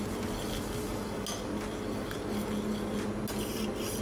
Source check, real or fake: real